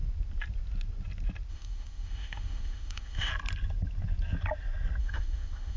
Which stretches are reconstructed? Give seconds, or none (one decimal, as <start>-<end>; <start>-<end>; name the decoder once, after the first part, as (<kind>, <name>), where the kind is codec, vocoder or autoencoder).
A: 1.5-3.3 (autoencoder, DAC-VAE); 5.0-5.8